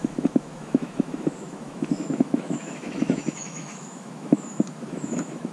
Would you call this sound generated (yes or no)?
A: yes